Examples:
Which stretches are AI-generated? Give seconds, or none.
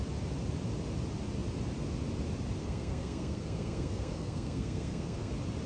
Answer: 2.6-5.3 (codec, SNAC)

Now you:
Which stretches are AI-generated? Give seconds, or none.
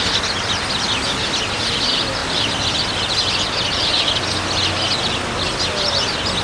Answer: none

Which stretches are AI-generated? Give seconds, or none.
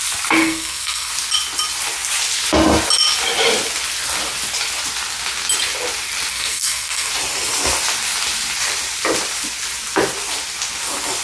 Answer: 0.4-1.1 (codec, SNAC); 6.3-7.1